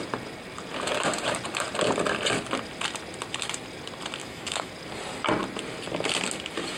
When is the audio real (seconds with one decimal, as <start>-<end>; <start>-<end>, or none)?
0.0-4.2; 4.7-6.8